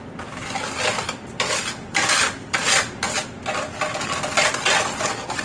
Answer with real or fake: real